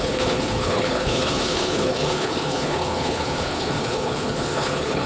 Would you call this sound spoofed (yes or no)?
yes